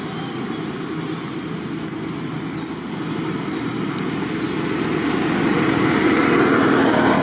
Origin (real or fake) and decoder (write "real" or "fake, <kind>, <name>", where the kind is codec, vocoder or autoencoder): real